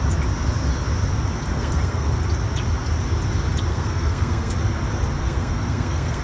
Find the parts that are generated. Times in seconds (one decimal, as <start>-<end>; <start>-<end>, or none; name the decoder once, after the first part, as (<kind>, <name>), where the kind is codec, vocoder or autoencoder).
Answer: 1.5-2.1 (codec, SNAC); 3.7-4.5; 5.2-6.2